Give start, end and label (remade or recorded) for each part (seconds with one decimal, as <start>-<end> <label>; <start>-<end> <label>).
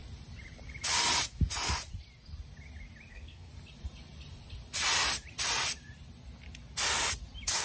0.0-3.1 recorded; 3.1-3.5 remade; 3.5-7.6 recorded